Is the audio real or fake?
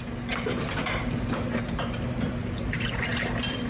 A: fake